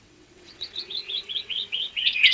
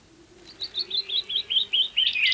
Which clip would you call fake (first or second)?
first